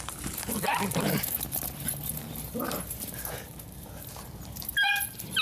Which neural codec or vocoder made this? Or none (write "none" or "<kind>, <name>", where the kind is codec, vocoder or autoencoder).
vocoder, BigVGAN v2